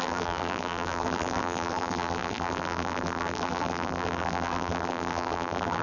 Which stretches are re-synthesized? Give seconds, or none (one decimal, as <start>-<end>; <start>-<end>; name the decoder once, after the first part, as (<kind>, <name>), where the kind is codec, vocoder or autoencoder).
0.0-5.8 (vocoder, BigVGAN v2)